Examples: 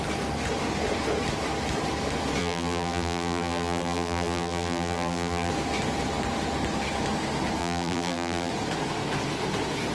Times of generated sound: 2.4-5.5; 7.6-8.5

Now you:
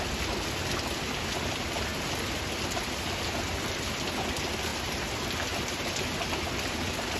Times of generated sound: none

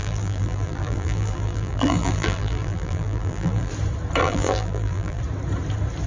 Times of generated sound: 0.0-3.7; 4.2-5.2